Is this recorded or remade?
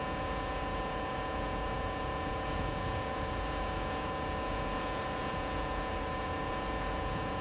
remade